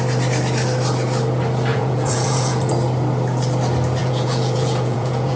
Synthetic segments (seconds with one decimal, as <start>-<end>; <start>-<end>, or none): 1.7-2.7; 4.0-5.4

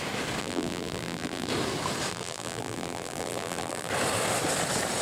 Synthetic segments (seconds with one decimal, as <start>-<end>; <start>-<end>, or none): 0.4-1.5; 2.1-3.9

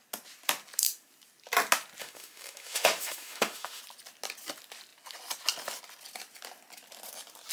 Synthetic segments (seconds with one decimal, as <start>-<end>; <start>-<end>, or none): 2.0-3.8

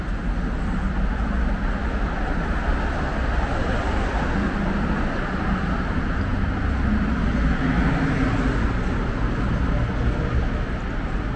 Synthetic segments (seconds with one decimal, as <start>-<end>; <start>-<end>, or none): none

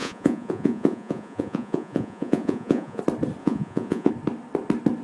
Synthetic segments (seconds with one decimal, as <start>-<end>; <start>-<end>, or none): 0.0-3.0; 3.4-4.1

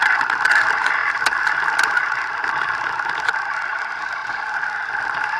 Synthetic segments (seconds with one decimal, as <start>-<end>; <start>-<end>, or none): 0.0-1.0; 2.5-4.2; 5.0-5.4

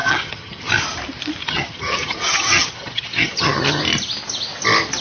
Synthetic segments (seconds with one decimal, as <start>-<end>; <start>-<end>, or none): 0.0-0.7; 1.4-3.8